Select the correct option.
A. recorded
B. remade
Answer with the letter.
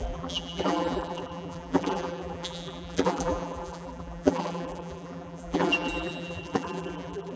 B